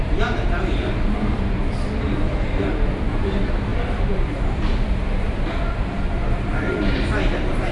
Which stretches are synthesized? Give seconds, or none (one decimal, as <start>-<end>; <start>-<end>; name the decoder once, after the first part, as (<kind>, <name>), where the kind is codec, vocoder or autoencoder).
0.0-1.6 (vocoder, BigVGAN v2); 2.2-7.7